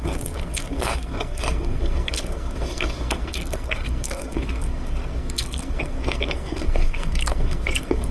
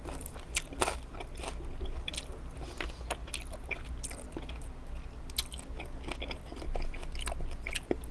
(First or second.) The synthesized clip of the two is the first